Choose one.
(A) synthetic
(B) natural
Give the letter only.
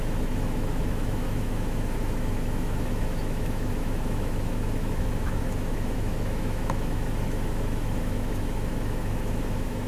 A